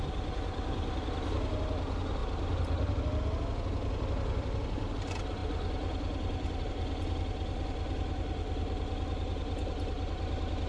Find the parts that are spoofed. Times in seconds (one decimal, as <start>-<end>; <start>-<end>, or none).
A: none